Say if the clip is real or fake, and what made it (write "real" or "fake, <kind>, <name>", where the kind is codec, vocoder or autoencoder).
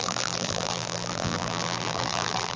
fake, vocoder, BigVGAN v2